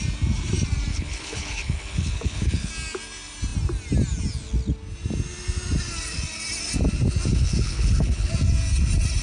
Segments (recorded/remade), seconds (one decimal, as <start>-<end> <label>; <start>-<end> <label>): 0.0-0.9 recorded; 0.9-2.7 remade; 2.7-7.3 recorded; 7.3-8.3 remade; 8.3-9.2 recorded